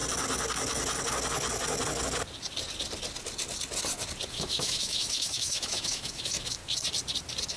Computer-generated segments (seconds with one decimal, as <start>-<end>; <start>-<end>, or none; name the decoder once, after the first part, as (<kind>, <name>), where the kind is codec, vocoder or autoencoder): 4.3-6.6 (autoencoder, DAC-VAE)